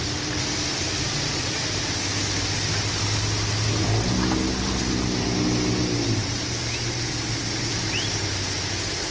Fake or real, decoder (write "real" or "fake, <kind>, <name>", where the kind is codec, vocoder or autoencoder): real